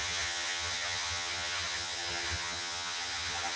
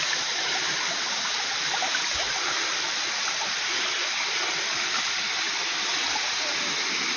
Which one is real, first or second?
second